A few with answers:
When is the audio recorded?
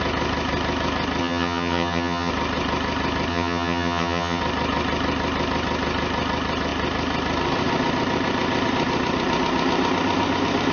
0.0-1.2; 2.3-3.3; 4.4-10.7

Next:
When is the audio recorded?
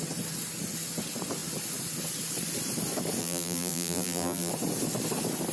0.0-3.2; 4.5-5.5